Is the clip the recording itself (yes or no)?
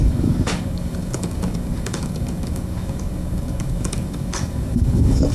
no